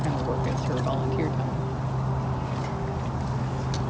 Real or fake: real